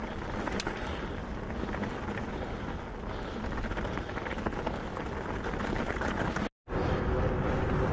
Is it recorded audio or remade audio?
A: recorded